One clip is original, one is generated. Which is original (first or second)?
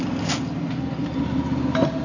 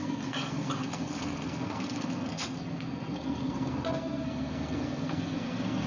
first